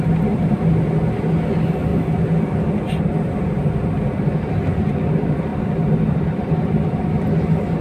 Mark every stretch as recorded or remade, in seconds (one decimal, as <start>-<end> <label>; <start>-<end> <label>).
0.0-5.5 recorded; 5.5-7.0 remade; 7.0-7.8 recorded